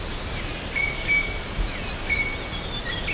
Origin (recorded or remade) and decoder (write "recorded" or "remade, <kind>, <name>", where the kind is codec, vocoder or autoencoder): recorded